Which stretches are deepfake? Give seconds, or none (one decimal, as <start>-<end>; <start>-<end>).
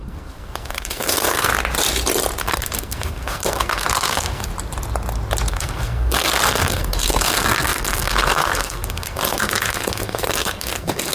0.0-1.5; 2.4-4.5; 5.5-11.1